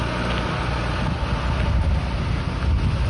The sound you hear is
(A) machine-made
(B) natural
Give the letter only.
B